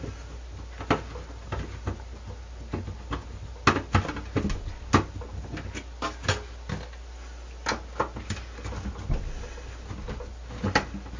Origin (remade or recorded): recorded